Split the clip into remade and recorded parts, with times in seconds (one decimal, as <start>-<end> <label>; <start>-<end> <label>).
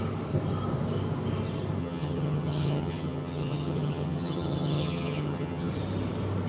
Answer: 0.0-1.8 recorded; 1.8-5.7 remade; 5.7-6.5 recorded